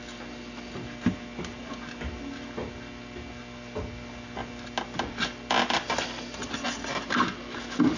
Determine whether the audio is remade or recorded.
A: recorded